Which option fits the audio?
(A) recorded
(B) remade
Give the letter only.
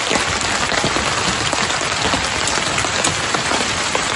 B